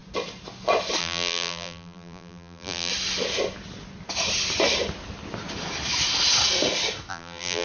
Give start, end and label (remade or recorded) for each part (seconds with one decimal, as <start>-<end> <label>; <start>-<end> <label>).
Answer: 0.0-1.0 recorded; 1.0-2.9 remade; 2.9-7.1 recorded; 7.1-7.6 remade